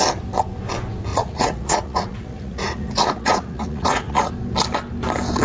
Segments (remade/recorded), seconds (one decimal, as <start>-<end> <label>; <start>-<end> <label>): 0.0-1.1 recorded; 1.1-4.3 remade; 4.3-5.4 recorded